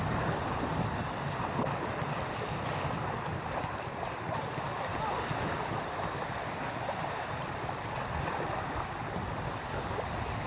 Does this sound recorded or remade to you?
recorded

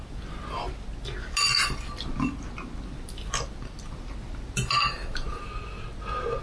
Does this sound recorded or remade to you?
recorded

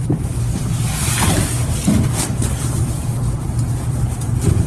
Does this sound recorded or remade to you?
recorded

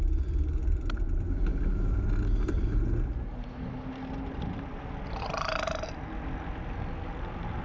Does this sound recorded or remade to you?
recorded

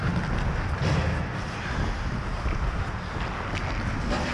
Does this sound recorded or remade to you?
recorded